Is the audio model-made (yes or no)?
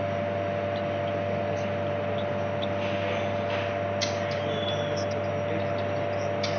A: no